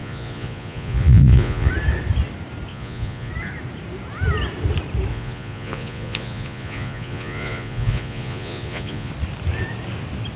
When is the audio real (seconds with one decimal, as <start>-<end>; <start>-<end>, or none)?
1.7-2.7; 3.3-5.1; 9.1-10.4